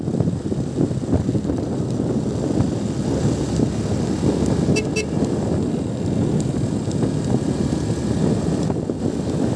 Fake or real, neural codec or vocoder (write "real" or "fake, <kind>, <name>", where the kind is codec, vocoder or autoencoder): real